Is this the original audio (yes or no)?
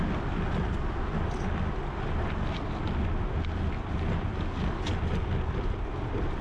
yes